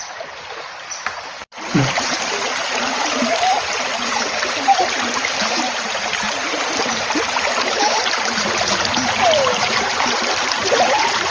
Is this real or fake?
fake